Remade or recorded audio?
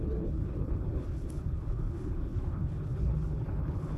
remade